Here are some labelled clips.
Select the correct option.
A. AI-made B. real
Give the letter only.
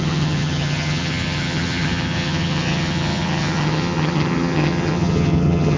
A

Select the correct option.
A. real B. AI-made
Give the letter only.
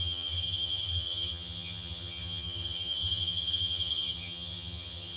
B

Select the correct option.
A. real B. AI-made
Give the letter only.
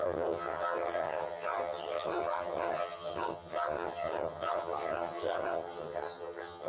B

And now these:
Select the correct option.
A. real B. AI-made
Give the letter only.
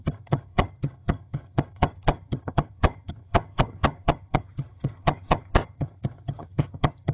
B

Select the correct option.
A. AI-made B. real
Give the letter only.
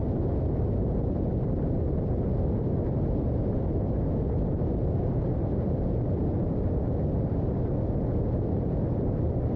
B